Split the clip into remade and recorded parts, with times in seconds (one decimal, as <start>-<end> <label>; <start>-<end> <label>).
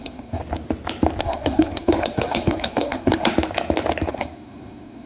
0.0-0.4 remade; 0.4-1.2 recorded; 1.2-3.3 remade; 3.3-4.1 recorded; 4.1-5.1 remade